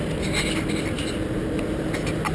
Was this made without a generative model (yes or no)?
yes